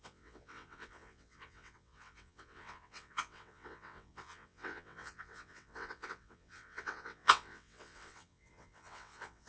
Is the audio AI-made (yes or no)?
yes